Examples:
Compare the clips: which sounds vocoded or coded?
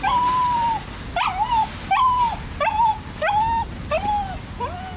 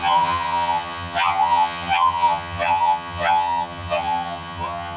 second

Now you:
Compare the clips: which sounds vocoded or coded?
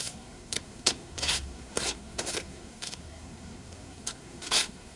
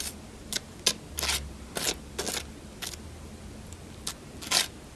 first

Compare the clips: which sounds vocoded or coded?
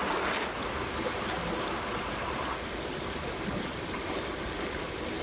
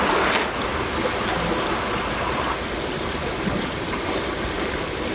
first